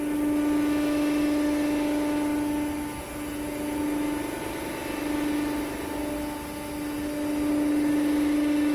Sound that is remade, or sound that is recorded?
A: recorded